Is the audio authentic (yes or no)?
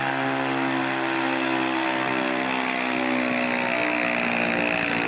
yes